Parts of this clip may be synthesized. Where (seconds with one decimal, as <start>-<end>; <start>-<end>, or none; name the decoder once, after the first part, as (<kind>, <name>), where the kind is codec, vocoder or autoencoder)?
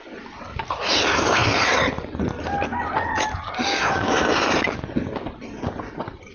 none